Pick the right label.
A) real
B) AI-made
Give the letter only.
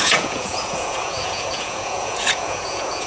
B